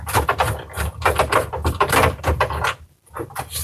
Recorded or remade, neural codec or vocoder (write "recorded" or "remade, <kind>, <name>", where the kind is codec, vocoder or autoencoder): recorded